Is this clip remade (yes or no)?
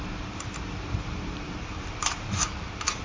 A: yes